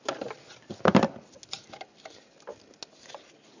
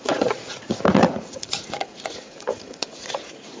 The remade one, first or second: second